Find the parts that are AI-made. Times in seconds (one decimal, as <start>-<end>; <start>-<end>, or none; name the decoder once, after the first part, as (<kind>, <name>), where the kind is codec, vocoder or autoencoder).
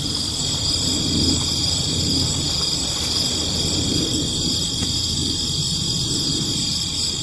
none